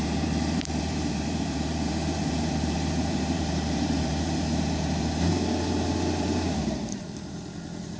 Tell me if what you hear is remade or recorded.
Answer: remade